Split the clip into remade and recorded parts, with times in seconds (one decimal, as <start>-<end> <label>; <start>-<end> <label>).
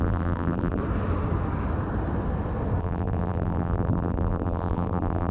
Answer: 0.0-0.8 remade; 0.8-2.8 recorded; 2.8-5.3 remade